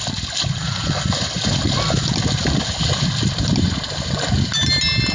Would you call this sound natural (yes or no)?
yes